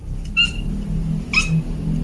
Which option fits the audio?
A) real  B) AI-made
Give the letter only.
A